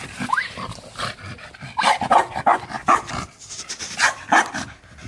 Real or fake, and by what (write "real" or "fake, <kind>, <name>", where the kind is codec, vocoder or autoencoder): real